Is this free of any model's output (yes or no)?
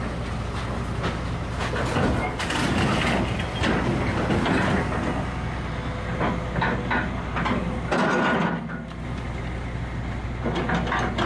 yes